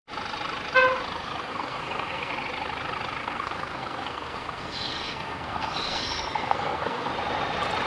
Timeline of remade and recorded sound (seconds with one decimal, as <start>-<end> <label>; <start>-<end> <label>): 0.0-1.4 recorded; 1.4-2.3 remade; 2.3-3.2 recorded; 3.2-7.1 remade; 7.1-7.9 recorded